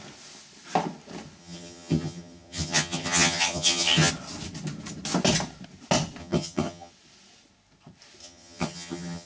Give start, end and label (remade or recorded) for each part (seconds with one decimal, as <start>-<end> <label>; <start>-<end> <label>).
0.0-1.4 recorded; 1.4-4.1 remade; 4.1-6.2 recorded; 6.2-6.9 remade; 6.9-8.2 recorded; 8.2-9.3 remade